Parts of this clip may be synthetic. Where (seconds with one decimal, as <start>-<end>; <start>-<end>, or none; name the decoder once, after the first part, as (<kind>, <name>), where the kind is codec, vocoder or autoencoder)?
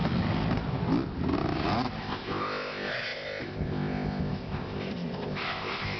2.0-6.0 (codec, ZipCodec)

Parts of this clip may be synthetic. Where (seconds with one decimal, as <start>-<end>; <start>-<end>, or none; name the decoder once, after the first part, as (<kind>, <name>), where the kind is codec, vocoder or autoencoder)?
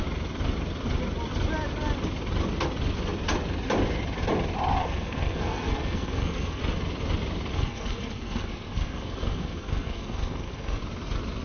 4.8-6.6 (codec, SNAC); 7.5-10.8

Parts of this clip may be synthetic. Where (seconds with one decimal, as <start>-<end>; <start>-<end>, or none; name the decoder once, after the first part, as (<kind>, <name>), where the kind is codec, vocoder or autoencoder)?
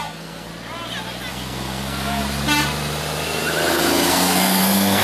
0.0-0.5 (codec, SNAC); 1.3-2.2; 3.7-5.0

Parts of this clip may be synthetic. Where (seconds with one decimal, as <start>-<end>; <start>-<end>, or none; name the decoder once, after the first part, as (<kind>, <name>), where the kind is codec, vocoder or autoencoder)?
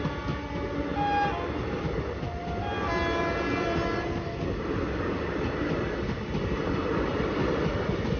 none